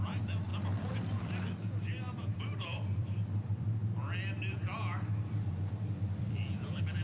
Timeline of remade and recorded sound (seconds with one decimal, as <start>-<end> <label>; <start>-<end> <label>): 0.0-3.8 remade; 3.8-5.1 recorded; 5.1-7.0 remade